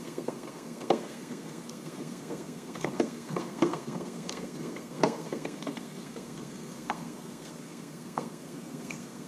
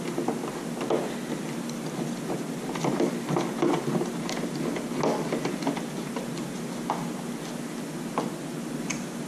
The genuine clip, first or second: second